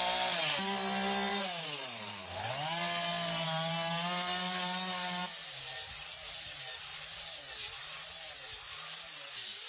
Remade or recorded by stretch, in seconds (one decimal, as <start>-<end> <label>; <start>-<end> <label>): 0.0-1.3 recorded; 1.3-2.5 remade; 2.5-5.4 recorded; 5.4-8.6 remade; 8.6-9.7 recorded